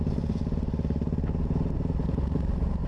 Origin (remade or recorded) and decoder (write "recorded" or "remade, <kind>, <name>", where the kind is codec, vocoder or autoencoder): recorded